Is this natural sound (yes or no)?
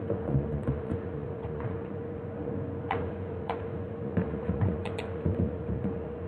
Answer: no